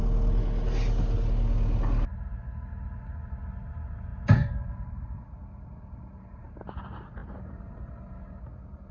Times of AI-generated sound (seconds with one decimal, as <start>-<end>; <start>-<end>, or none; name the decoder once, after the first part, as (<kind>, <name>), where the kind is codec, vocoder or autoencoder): none